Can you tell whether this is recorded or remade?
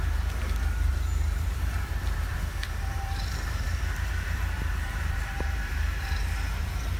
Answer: remade